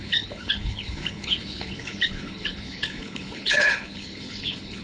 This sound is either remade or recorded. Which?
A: remade